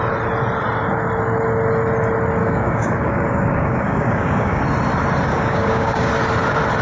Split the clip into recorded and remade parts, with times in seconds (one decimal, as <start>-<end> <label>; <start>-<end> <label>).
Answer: 0.0-2.4 recorded; 2.4-4.6 remade; 4.6-5.3 recorded; 5.3-6.1 remade; 6.1-6.8 recorded